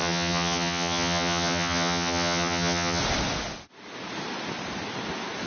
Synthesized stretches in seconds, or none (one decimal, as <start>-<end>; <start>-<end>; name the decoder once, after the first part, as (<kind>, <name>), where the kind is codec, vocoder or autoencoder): 0.0-3.0 (vocoder, HiFi-GAN)